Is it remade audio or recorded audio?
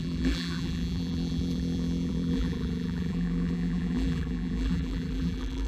remade